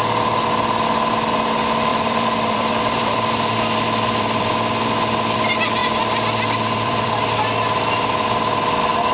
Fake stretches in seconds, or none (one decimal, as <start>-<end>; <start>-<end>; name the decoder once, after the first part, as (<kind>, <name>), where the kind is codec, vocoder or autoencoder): 1.9-4.5 (vocoder, BigVGAN v2); 5.8-7.1